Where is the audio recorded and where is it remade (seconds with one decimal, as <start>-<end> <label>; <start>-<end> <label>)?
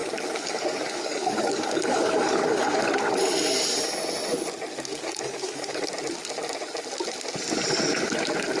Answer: 0.0-2.8 remade; 2.8-4.9 recorded; 4.9-5.9 remade; 5.9-8.6 recorded